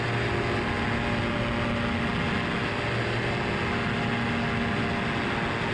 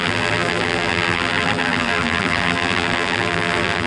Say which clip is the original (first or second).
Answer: first